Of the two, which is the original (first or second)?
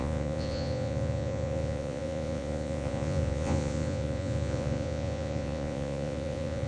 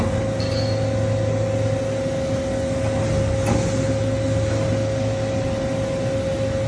second